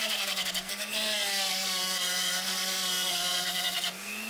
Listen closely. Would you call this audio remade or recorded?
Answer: remade